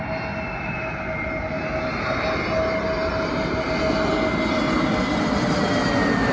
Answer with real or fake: real